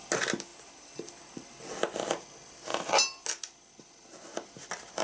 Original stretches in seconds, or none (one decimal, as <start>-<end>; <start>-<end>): 0.0-5.0